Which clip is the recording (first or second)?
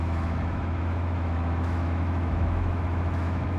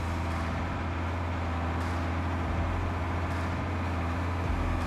second